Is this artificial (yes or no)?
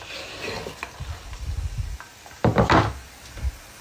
no